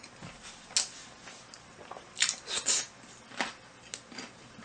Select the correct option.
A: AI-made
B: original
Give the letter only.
B